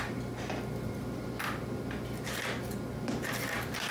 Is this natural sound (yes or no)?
yes